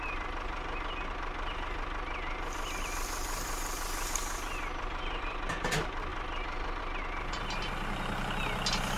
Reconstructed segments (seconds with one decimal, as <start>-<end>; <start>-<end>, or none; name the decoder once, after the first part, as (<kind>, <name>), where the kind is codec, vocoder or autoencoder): 6.1-6.8 (vocoder, BigVGAN v2)